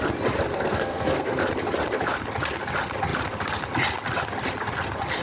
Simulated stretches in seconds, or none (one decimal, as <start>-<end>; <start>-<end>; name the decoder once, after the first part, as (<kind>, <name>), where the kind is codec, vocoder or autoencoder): 0.5-1.3 (codec, SNAC)

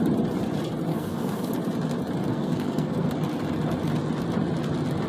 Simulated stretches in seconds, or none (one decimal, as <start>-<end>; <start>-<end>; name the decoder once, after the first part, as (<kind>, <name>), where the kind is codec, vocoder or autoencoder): 0.9-1.5 (codec, SNAC); 2.3-3.1